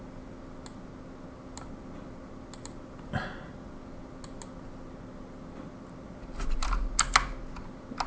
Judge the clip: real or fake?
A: real